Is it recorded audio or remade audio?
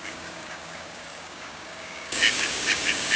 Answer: remade